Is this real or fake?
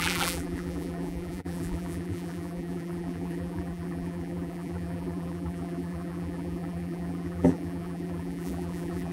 fake